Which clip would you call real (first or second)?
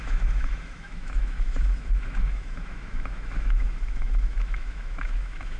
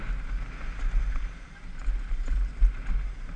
second